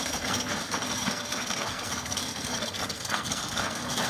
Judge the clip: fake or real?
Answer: fake